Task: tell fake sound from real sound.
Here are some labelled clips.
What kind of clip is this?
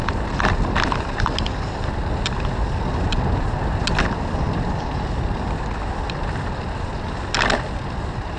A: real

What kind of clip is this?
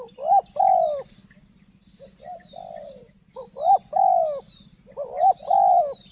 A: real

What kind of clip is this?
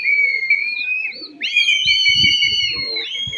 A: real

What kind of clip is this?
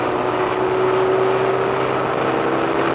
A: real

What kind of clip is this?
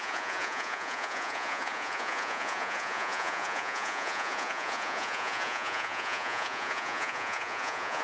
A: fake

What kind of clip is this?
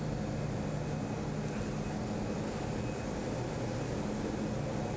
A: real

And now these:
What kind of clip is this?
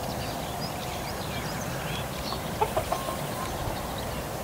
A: real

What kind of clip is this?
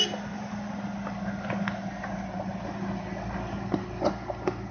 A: real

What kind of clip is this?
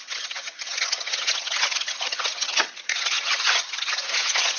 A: fake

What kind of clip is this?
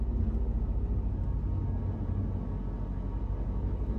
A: real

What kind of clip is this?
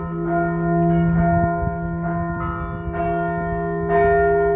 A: real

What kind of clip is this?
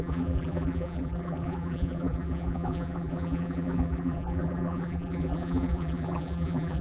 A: fake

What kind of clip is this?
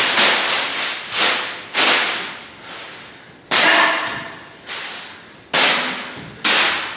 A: real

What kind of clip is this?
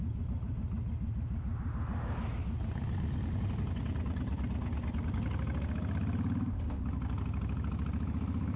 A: real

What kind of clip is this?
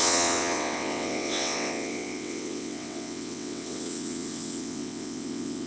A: fake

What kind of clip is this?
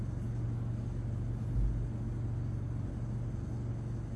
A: real